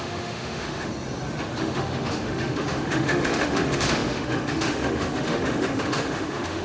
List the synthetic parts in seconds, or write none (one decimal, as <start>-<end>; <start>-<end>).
0.0-0.9; 1.6-6.6